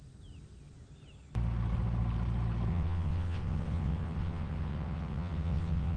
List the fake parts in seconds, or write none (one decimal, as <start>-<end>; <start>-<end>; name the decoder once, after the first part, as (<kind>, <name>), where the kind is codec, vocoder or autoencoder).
2.7-6.0 (vocoder, WaveNeXt)